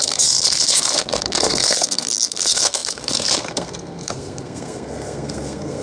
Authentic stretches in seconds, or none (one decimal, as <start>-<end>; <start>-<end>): none